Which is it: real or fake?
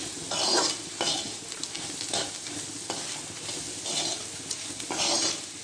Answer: real